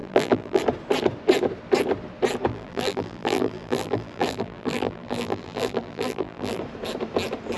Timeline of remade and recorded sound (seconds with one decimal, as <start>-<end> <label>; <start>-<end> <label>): 0.0-0.6 remade; 0.6-2.5 recorded; 2.5-6.6 remade; 6.6-7.6 recorded

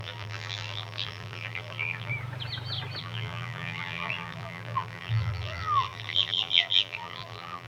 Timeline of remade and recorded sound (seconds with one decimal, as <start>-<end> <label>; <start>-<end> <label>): 0.0-2.1 remade; 2.1-3.0 recorded; 3.0-7.7 remade

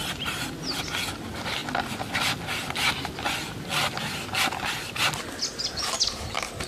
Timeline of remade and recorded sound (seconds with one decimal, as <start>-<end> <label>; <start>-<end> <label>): 0.0-6.7 recorded

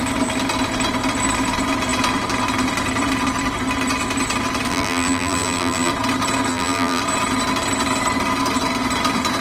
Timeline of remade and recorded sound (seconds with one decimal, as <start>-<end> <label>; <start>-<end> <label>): 0.0-4.7 recorded; 4.7-5.9 remade; 5.9-6.5 recorded; 6.5-7.0 remade; 7.0-9.4 recorded

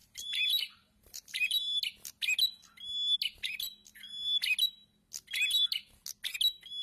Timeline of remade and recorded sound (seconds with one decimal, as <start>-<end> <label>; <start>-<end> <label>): 0.0-1.8 remade; 1.8-6.8 recorded

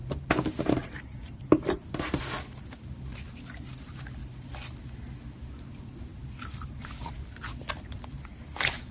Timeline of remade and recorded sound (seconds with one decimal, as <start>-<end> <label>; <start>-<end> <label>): 0.0-2.2 remade; 2.2-6.1 recorded; 6.1-6.9 remade; 6.9-8.9 recorded

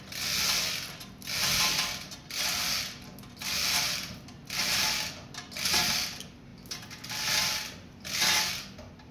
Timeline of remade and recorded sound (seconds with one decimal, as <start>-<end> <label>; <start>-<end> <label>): 0.0-9.1 recorded